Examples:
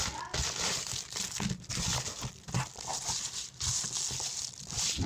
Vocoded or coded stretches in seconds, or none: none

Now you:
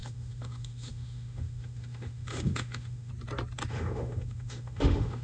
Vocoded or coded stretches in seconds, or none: 0.0-3.1 (autoencoder, DAC-VAE); 3.7-5.2

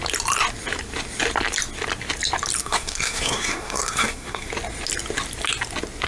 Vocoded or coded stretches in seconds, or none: 2.6-4.5 (codec, SNAC)

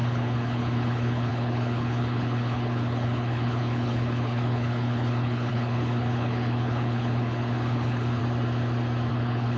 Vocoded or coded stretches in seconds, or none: 0.0-8.2 (codec, HILCodec); 9.1-9.6

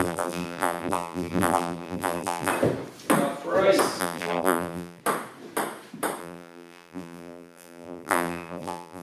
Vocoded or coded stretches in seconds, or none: 0.0-2.5 (vocoder, BigVGAN v2); 4.0-5.0; 6.2-9.0

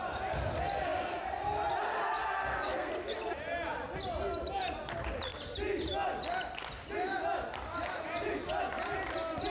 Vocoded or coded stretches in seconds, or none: 2.2-2.9 (codec, SNAC)

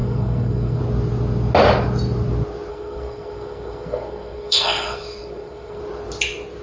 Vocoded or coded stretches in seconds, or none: 0.0-0.8 (codec, SNAC); 2.7-5.8